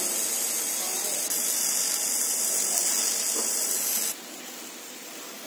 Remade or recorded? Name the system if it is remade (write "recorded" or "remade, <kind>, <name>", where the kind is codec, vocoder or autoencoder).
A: recorded